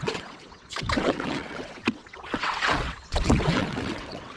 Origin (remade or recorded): remade